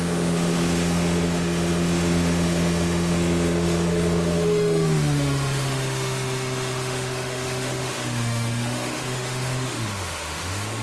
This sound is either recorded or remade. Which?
remade